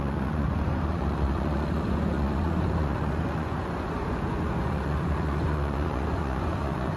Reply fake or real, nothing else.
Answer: fake